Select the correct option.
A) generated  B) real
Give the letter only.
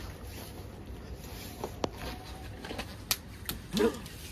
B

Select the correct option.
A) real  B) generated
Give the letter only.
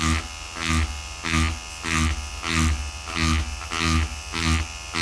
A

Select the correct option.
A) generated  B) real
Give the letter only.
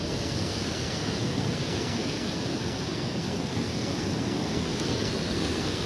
A